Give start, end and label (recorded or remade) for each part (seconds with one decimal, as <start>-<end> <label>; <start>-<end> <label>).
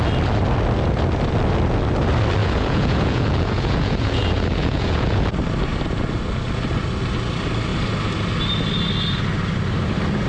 0.0-2.4 recorded; 2.4-5.3 remade; 5.3-10.3 recorded